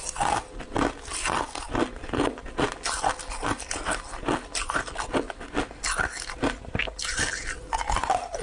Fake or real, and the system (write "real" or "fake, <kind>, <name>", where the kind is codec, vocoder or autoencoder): real